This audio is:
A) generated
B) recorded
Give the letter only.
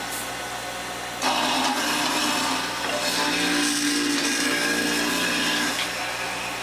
B